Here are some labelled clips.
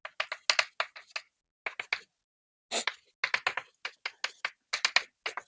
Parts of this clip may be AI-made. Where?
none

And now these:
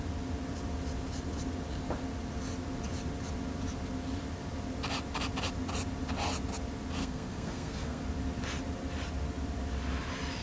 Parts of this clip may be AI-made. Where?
7.0-8.0 (codec, SNAC)

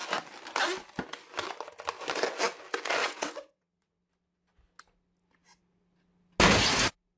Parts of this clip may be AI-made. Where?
3.0-4.0 (vocoder, WaveNeXt)

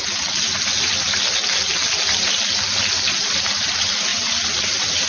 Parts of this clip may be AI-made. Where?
none

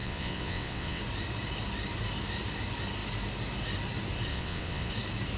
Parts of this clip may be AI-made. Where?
0.0-1.0 (vocoder, WaveNeXt); 4.3-4.9

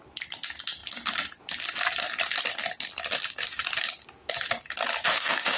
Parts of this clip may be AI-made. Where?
5.1-5.6 (autoencoder, DAC-VAE)

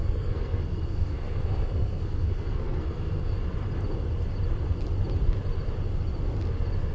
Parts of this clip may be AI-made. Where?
0.0-3.4 (codec, SNAC)

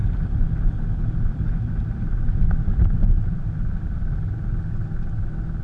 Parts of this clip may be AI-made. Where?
none